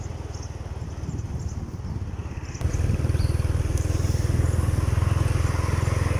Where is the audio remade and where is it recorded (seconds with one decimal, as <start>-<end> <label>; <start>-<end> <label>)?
0.0-2.2 recorded; 2.2-2.7 remade; 2.7-6.2 recorded